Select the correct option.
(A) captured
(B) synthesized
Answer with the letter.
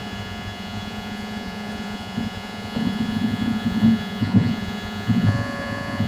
B